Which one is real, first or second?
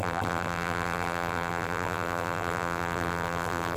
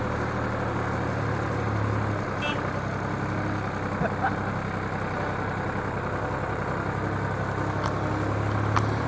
second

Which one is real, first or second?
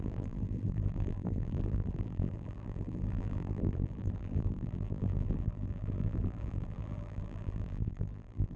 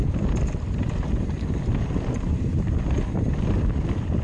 second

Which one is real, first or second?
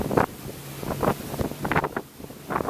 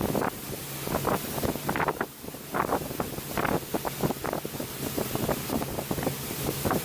first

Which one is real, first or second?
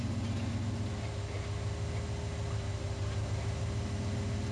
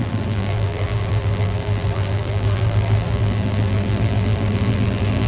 first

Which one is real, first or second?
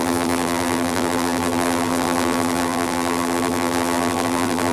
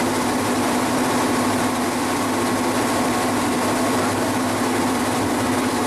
second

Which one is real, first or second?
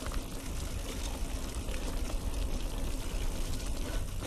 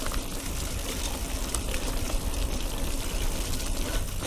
first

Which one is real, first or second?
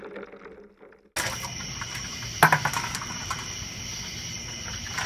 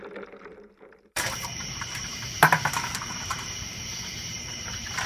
first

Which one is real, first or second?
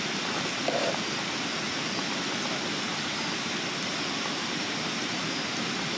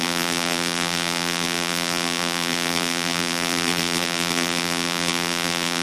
first